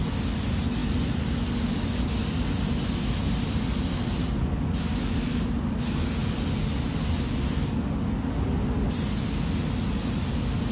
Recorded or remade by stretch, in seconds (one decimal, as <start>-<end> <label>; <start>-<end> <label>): 0.0-10.7 recorded

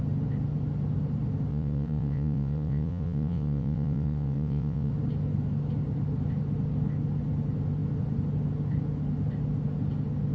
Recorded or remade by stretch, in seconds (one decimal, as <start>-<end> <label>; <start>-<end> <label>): 0.0-1.5 recorded; 1.5-4.9 remade; 4.9-10.3 recorded

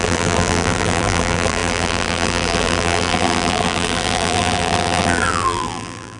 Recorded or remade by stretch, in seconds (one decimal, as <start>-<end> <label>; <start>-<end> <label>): 0.0-6.2 remade

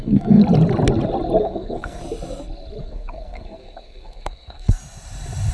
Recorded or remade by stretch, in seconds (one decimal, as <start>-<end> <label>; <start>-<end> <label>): 0.0-0.4 remade; 0.4-1.4 recorded; 1.4-2.0 remade; 2.0-2.8 recorded; 2.8-4.8 remade; 4.8-5.5 recorded

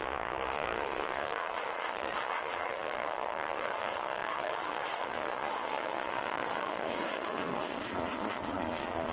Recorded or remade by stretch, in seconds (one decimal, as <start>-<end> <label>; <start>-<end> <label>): 0.0-9.1 remade

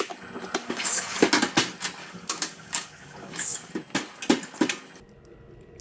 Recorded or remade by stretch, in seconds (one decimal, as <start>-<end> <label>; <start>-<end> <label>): 0.0-0.6 recorded; 0.6-1.3 remade; 1.3-2.0 recorded; 2.0-3.7 remade; 3.7-5.8 recorded

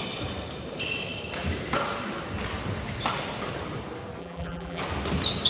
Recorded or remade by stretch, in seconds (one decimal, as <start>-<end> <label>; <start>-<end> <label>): 0.0-4.2 recorded; 4.2-4.8 remade; 4.8-5.5 recorded